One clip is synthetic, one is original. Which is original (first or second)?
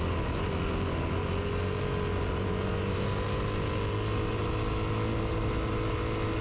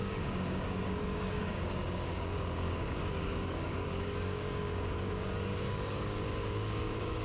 first